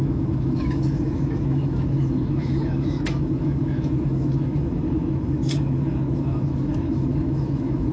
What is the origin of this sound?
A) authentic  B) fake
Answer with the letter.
B